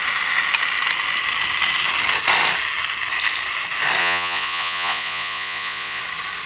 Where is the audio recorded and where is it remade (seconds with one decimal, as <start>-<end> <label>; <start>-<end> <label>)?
0.0-4.0 recorded; 4.0-6.0 remade; 6.0-6.5 recorded